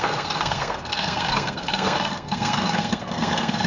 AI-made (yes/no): yes